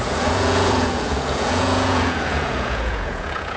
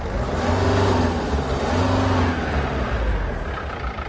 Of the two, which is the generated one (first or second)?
first